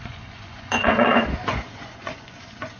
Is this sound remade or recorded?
remade